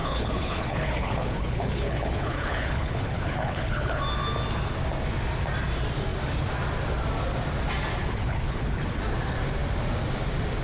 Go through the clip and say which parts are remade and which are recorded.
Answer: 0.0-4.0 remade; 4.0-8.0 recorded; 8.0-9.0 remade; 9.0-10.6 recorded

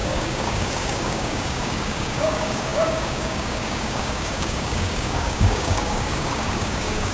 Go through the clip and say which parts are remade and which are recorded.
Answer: 0.0-7.1 remade